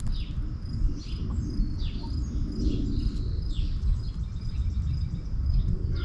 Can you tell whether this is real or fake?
real